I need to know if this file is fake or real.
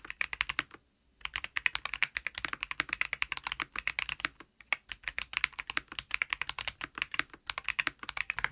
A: real